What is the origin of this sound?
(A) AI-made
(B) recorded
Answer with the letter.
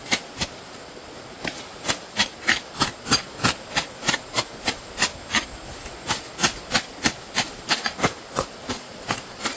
B